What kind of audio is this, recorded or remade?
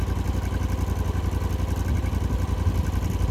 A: recorded